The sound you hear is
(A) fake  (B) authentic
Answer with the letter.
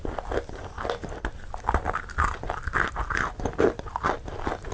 B